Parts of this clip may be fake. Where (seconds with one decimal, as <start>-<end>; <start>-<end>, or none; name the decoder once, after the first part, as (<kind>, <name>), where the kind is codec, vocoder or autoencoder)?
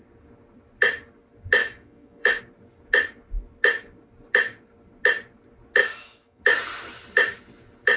1.6-2.4 (autoencoder, DAC-VAE); 5.8-6.4